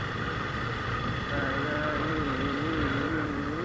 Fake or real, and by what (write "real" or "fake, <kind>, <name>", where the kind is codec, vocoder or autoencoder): fake, vocoder, BigVGAN v2